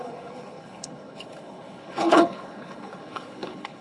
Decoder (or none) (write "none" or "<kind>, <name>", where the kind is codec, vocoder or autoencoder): codec, HILCodec